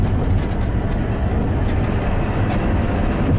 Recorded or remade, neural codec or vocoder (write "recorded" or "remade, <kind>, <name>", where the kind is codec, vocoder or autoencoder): recorded